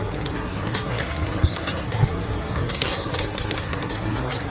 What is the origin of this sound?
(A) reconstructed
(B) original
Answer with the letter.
A